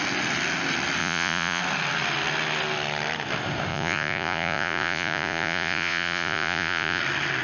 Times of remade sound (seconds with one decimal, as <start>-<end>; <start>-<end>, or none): 1.0-1.6; 3.7-7.0